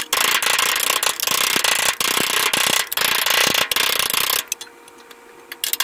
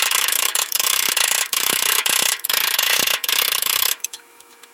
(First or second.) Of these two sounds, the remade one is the second